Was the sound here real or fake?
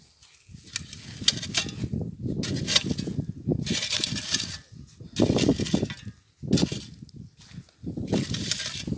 real